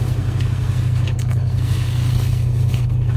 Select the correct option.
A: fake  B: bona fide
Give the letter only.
A